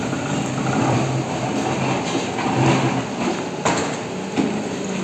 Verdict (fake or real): real